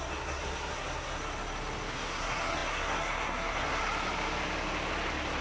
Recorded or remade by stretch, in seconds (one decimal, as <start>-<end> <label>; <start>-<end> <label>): 0.0-1.2 remade; 1.2-1.9 recorded; 1.9-3.8 remade; 3.8-5.4 recorded